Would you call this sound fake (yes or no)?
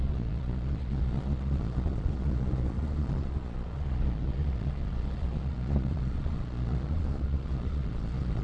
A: yes